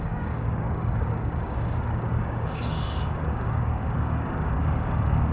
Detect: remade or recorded remade